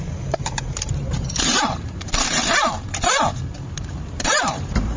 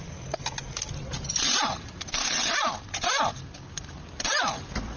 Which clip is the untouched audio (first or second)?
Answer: second